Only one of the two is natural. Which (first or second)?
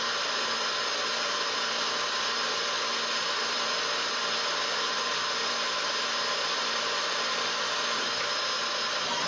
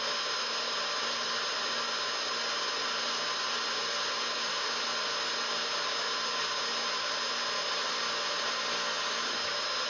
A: second